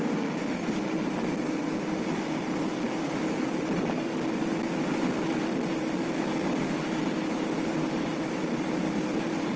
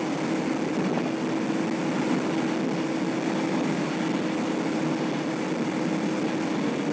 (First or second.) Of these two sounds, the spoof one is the first